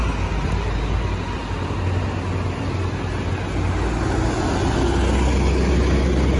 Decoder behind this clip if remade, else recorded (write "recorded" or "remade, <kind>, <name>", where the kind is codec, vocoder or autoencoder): recorded